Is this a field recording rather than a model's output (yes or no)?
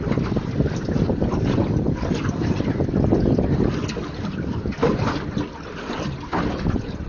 yes